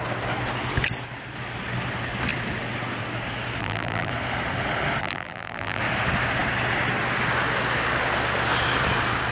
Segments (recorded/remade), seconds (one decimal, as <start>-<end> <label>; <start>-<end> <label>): 0.0-3.6 recorded; 3.6-4.1 remade; 4.1-5.0 recorded; 5.0-5.8 remade; 5.8-9.3 recorded